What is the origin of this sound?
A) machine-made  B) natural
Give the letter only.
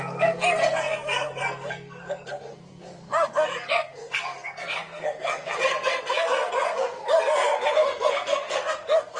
A